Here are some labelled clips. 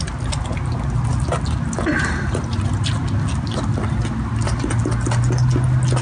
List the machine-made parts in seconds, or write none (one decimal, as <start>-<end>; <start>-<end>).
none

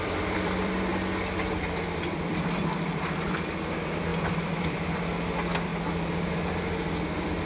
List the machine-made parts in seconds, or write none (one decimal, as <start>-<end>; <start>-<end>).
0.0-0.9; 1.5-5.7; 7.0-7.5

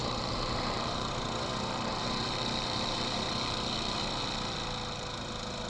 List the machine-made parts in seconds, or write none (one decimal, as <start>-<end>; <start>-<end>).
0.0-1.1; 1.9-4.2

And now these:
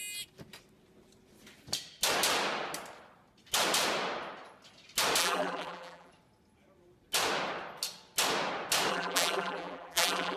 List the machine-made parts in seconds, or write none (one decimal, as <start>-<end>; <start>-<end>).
5.2-6.1; 8.9-10.4

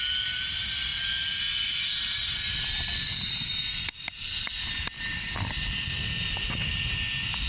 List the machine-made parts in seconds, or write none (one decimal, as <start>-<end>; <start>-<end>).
none

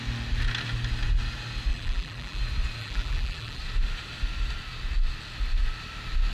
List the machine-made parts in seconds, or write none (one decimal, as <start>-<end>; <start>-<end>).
1.7-2.4; 2.8-3.6